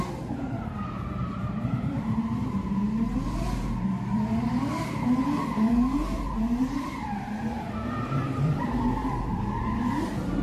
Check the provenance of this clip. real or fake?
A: fake